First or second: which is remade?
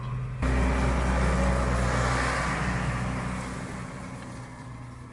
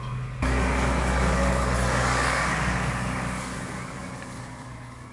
second